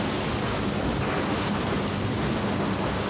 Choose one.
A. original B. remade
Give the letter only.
A